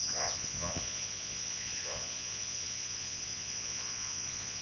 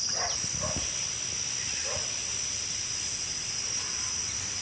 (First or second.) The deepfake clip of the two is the first